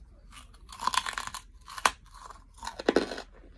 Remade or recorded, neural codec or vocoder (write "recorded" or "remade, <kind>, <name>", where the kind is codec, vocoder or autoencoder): recorded